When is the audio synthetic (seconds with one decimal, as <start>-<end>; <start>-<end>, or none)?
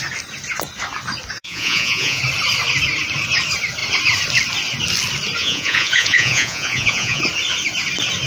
1.4-2.2; 5.4-7.2